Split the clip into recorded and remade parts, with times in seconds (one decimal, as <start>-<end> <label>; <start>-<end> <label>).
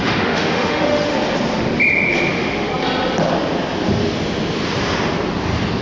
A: 0.0-1.1 remade; 1.1-2.3 recorded; 2.3-2.7 remade; 2.7-5.8 recorded